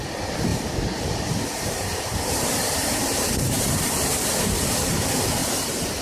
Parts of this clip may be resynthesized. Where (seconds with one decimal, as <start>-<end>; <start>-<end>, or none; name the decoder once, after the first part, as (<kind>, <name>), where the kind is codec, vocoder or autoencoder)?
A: 0.5-4.1 (vocoder, BigVGAN v2); 5.4-6.0